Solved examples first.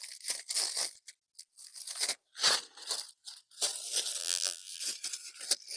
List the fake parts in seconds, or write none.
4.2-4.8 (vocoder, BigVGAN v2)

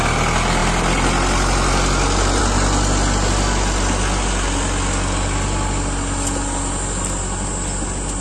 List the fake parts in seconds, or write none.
none